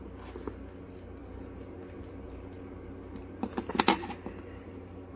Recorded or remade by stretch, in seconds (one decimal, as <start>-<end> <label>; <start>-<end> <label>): 0.0-5.2 recorded